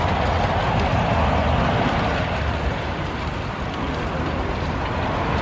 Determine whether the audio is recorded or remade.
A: recorded